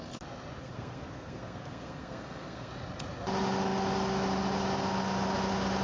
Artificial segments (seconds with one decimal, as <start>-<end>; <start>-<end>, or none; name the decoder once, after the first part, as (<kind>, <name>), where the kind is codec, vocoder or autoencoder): 0.6-2.7 (codec, SNAC)